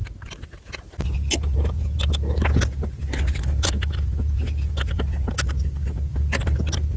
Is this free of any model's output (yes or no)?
yes